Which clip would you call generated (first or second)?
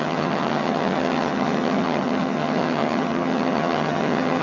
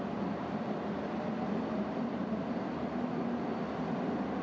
first